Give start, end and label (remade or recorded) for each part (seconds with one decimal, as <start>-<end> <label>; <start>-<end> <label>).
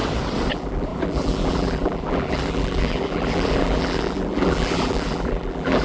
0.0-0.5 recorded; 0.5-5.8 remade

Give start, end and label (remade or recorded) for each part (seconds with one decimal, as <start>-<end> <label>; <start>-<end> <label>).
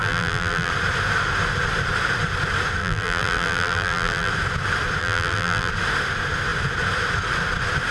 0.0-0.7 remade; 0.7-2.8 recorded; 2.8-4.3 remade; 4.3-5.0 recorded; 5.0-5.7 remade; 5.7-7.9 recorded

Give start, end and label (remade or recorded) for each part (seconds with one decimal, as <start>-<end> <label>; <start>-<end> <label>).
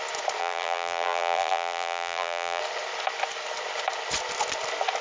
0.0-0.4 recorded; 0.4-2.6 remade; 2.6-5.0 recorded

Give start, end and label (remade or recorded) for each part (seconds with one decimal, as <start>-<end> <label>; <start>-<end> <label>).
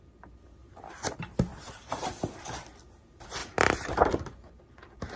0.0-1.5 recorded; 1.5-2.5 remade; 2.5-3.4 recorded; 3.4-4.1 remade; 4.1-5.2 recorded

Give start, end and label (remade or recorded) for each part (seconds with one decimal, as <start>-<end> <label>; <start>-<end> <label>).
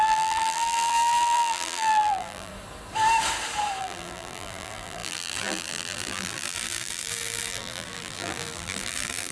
0.0-2.5 remade; 2.5-3.8 recorded; 3.8-9.3 remade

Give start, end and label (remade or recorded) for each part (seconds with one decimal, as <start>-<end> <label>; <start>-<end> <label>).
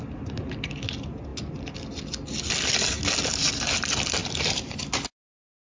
0.0-4.2 recorded; 4.2-4.8 remade; 4.8-5.7 recorded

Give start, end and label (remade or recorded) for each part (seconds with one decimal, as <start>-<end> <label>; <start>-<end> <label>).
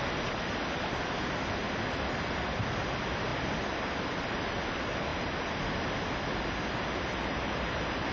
0.0-8.1 recorded